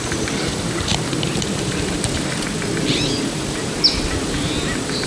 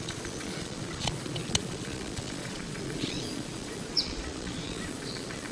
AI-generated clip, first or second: second